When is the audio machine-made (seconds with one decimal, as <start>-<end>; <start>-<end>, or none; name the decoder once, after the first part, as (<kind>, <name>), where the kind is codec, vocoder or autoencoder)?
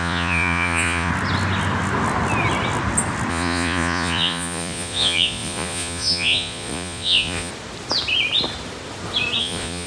0.0-1.1 (vocoder, Vocos); 3.3-7.5; 9.4-9.9